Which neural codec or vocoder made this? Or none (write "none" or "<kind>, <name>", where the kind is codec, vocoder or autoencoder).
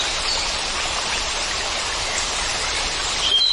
vocoder, BigVGAN v2